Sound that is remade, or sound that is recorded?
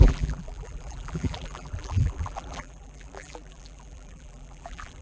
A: remade